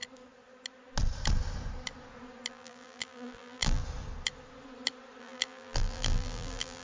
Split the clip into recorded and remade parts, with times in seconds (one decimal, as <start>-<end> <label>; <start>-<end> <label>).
0.0-2.5 recorded; 2.5-3.8 remade; 3.8-5.2 recorded; 5.2-6.8 remade

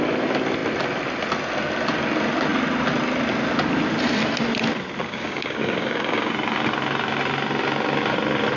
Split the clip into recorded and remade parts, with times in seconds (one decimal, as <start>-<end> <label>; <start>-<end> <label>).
0.0-5.0 recorded; 5.0-6.3 remade; 6.3-8.6 recorded

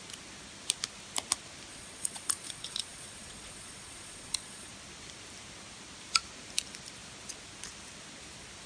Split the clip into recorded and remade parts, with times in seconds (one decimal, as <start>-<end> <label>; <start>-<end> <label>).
0.0-1.7 recorded; 1.7-4.7 remade; 4.7-8.7 recorded

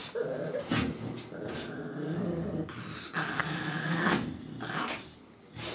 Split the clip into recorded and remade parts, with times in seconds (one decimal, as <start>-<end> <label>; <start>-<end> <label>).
0.0-3.8 recorded; 3.8-4.4 remade; 4.4-5.7 recorded

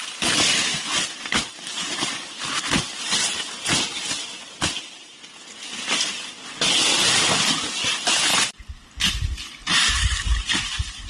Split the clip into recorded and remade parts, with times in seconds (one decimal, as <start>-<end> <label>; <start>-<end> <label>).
0.0-0.7 recorded; 0.7-2.4 remade; 2.4-11.1 recorded

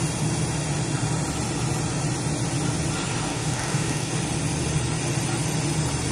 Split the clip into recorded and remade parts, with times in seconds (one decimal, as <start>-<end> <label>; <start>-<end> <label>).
0.0-3.3 recorded; 3.3-4.1 remade; 4.1-6.1 recorded

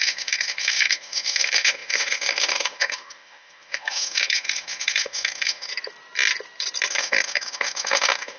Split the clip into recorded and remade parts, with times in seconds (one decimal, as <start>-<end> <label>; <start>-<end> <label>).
0.0-5.7 remade; 5.7-6.9 recorded; 6.9-8.4 remade

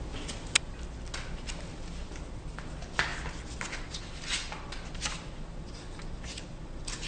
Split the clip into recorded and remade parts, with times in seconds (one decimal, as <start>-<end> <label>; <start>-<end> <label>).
0.0-7.1 recorded